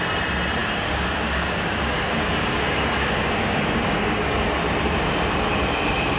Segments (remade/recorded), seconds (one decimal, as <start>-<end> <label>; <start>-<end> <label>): 0.0-0.6 recorded; 0.6-4.3 remade; 4.3-6.2 recorded